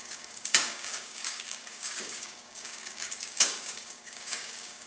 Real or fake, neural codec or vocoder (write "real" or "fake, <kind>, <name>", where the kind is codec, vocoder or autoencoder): fake, codec, DAC